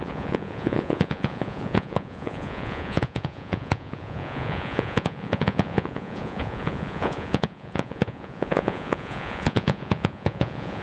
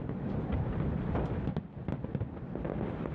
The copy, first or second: first